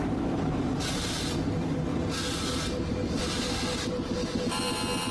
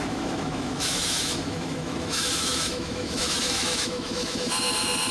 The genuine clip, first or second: first